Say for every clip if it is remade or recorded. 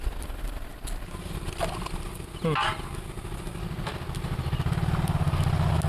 recorded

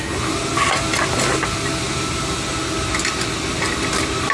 recorded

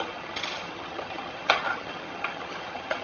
remade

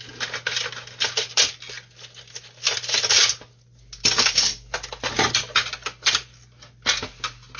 recorded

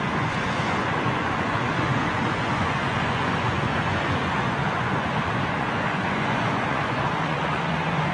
remade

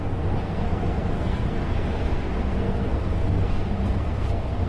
remade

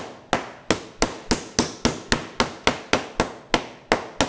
recorded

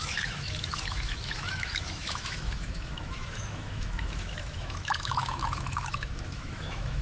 remade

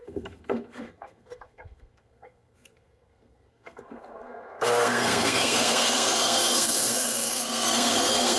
remade